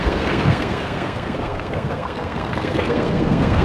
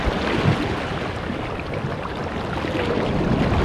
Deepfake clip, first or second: first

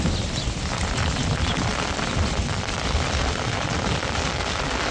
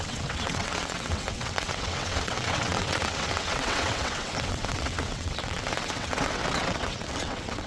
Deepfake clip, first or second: second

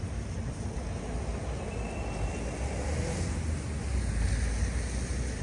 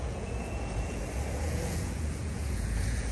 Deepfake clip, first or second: second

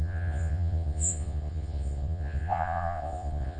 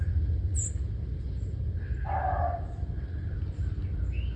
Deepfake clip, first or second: first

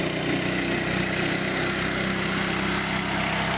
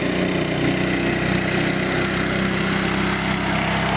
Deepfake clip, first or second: first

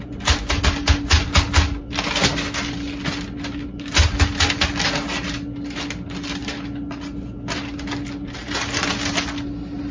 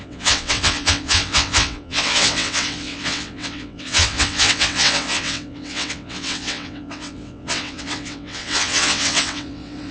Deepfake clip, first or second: second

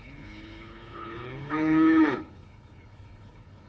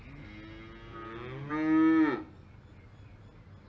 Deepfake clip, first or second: first